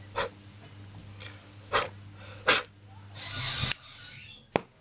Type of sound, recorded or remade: recorded